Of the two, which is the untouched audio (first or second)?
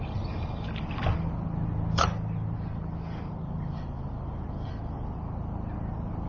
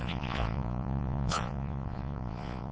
first